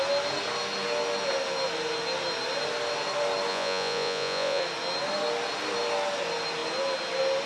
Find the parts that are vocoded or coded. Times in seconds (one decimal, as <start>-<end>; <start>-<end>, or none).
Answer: 3.5-4.6